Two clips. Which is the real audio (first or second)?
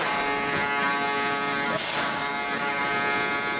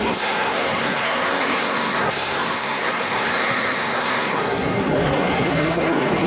first